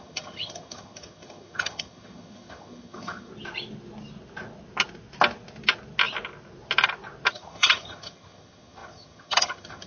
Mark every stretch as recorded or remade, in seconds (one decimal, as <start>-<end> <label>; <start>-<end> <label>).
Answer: 0.0-3.3 remade; 3.3-7.3 recorded; 7.3-9.9 remade